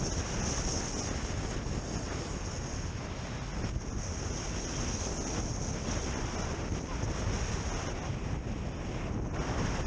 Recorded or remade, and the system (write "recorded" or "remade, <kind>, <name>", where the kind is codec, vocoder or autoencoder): recorded